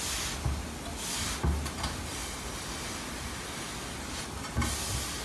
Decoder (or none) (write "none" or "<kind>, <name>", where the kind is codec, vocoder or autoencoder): none